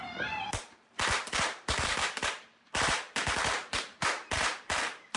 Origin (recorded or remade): remade